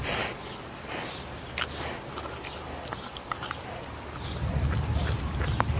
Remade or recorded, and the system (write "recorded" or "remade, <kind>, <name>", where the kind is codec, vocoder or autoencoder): recorded